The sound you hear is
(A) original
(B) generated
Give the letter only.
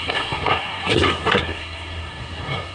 B